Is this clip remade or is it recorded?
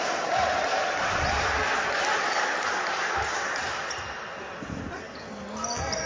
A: recorded